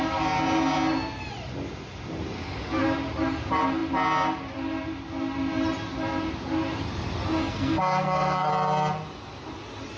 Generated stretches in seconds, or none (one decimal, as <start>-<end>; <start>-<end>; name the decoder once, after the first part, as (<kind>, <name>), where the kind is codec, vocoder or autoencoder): 7.4-8.5 (codec, SNAC)